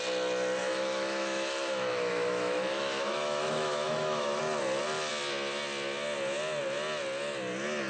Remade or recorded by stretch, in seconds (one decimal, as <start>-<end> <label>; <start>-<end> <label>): 0.0-0.6 recorded; 0.6-4.4 remade; 4.4-7.9 recorded